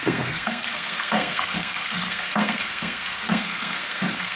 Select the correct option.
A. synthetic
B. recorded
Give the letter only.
A